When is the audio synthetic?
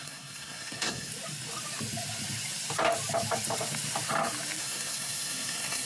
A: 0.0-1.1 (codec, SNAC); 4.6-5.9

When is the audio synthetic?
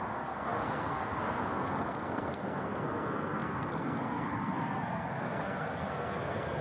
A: 0.0-6.6 (codec, SNAC)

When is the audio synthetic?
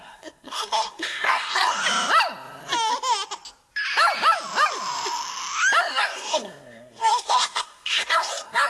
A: 0.0-1.8 (codec, SNAC); 5.8-8.7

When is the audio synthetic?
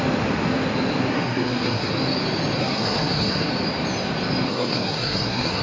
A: 1.1-1.9 (codec, SNAC); 2.6-3.5; 4.5-5.6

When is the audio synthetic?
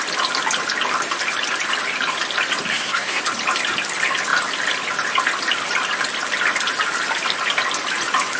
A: 2.7-3.2 (codec, SNAC)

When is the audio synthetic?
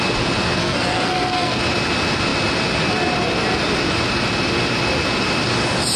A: 0.6-1.6 (codec, SNAC)